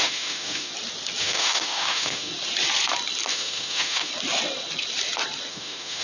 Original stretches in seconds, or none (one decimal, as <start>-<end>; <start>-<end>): 0.7-1.2; 2.3-3.3; 4.1-5.5